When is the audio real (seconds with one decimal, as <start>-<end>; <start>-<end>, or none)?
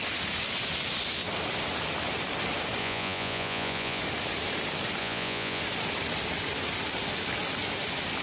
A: 0.0-2.8; 4.0-5.0; 5.6-8.2